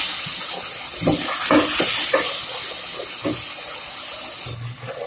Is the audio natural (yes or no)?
yes